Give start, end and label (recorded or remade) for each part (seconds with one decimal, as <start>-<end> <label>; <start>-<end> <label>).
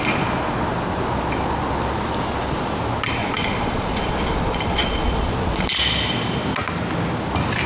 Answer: 0.0-3.2 recorded; 3.2-5.8 remade; 5.8-7.7 recorded